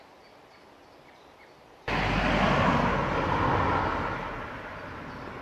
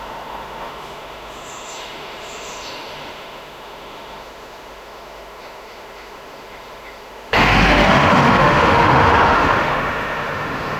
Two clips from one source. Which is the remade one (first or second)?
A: second